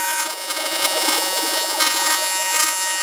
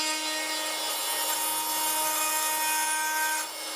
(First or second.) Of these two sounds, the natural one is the second